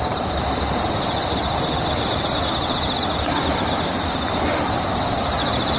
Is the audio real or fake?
real